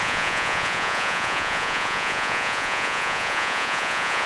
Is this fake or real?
fake